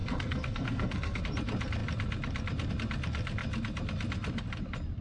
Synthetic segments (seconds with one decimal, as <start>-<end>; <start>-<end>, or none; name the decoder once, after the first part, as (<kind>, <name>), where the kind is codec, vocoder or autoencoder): 0.0-1.2 (codec, SNAC)